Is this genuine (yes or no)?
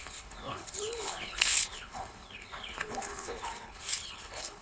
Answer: no